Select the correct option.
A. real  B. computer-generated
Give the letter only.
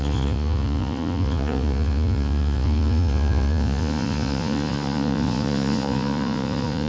B